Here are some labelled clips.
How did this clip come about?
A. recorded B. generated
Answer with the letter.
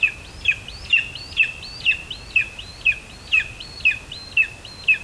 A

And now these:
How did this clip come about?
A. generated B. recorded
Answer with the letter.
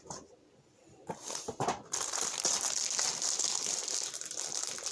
B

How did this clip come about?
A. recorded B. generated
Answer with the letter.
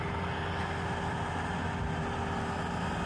A